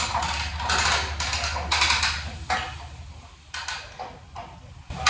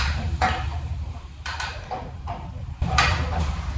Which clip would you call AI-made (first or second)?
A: second